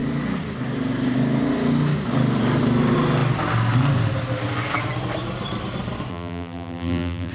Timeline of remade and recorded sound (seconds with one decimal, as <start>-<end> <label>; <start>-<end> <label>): 0.0-6.1 recorded; 6.1-7.3 remade